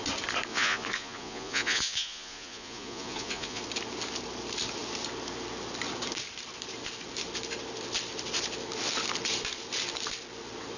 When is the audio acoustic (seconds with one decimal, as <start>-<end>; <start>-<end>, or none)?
0.0-0.5; 3.6-10.8